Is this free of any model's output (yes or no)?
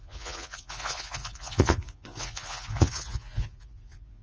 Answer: no